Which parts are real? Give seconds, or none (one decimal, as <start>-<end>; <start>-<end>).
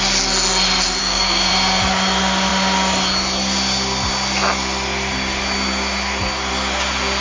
0.0-1.0; 1.5-7.2